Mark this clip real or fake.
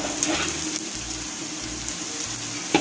fake